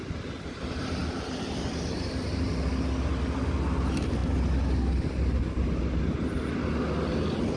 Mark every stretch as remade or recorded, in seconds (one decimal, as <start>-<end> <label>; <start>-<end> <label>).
0.0-7.6 recorded